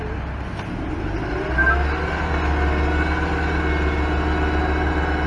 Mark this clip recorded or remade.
recorded